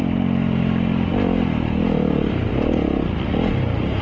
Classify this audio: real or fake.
real